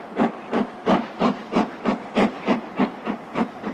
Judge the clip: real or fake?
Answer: real